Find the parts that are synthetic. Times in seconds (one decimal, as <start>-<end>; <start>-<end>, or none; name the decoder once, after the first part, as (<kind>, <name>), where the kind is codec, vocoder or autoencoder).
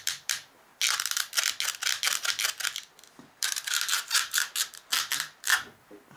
0.0-0.7 (vocoder, BigVGAN v2); 3.3-5.5